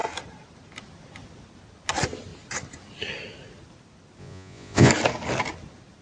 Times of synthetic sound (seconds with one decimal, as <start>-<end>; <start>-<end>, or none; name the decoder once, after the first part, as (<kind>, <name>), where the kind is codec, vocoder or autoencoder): 4.2-4.9 (vocoder, Vocos)